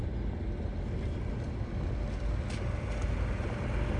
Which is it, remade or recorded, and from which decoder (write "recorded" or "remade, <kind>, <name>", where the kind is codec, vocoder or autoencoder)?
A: recorded